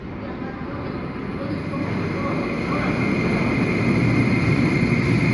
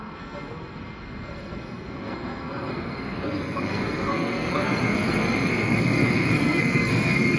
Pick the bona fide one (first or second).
first